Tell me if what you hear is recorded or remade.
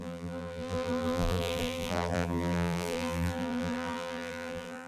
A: remade